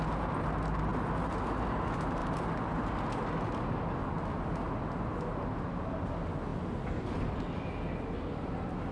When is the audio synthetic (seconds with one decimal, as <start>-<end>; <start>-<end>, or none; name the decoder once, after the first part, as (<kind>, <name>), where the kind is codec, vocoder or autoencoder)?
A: none